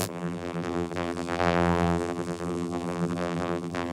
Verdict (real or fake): fake